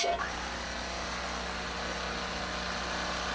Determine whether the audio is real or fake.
real